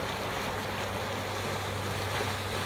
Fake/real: real